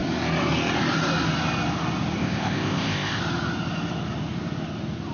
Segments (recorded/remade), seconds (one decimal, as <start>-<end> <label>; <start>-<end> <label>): 0.0-2.2 recorded; 2.2-3.2 remade; 3.2-5.1 recorded